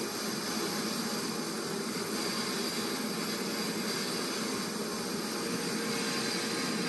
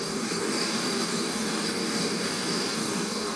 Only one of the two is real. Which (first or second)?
first